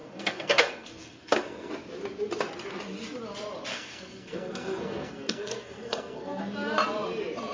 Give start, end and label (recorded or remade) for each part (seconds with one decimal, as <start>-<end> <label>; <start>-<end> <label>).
0.0-1.7 remade; 1.7-3.7 recorded; 3.7-6.4 remade; 6.4-7.5 recorded